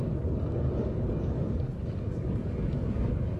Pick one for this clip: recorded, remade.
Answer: remade